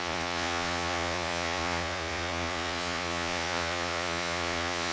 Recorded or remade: remade